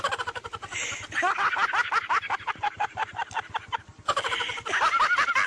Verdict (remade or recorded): recorded